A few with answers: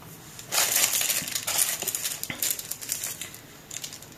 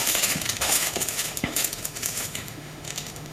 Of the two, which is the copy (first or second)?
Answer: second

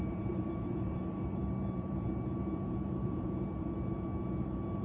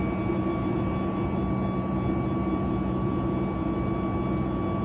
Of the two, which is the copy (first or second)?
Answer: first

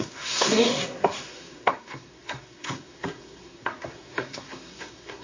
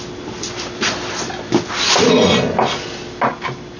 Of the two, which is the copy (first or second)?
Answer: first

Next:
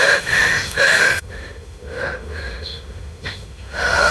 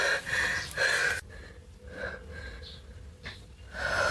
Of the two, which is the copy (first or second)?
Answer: first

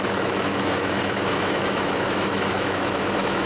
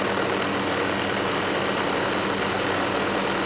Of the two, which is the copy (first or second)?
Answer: first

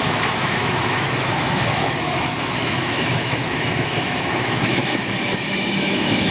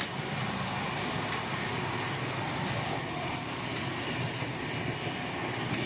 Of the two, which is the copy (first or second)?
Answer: first